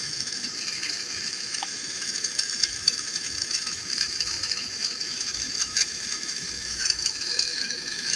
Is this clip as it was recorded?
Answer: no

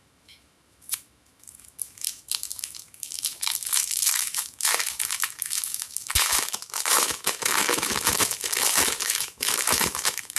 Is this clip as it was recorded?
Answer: no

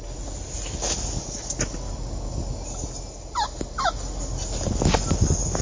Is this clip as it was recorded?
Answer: yes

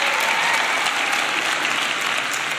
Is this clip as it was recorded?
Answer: yes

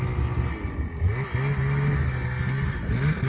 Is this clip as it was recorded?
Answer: yes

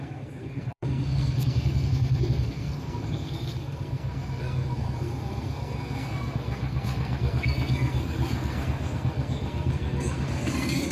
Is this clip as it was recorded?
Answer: no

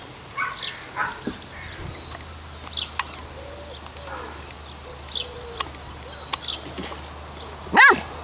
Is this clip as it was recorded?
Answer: yes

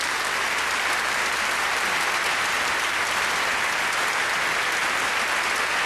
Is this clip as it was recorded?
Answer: yes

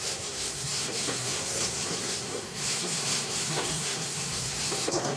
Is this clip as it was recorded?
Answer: no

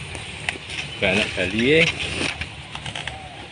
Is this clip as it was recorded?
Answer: yes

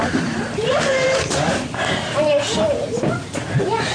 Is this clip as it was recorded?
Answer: no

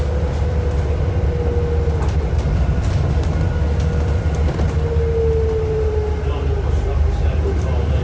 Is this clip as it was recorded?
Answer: yes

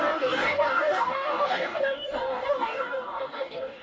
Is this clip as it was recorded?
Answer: no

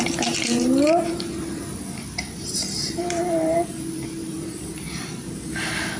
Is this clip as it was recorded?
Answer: no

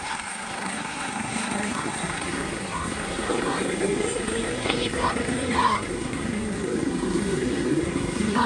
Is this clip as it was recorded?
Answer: no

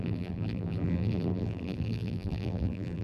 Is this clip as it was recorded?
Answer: no